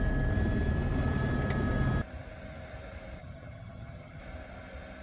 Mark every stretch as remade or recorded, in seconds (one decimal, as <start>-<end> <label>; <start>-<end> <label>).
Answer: 0.0-3.2 recorded; 3.2-4.2 remade; 4.2-5.0 recorded